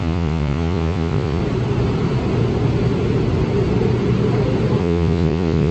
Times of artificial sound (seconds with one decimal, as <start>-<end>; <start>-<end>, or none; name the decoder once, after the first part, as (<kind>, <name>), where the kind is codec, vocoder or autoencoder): 0.0-1.4 (vocoder, Vocos); 4.8-5.7